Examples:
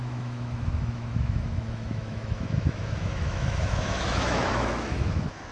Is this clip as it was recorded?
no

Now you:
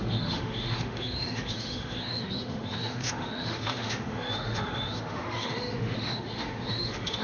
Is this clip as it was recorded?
no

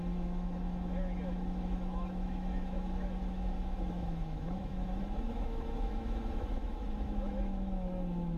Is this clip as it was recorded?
no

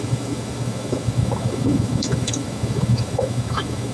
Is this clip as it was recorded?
no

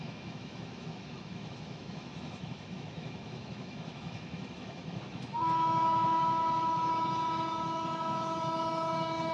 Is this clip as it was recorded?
no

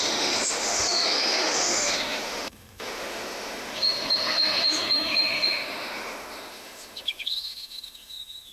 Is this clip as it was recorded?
no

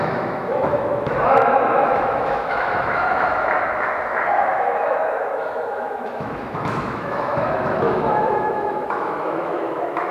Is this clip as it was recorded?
no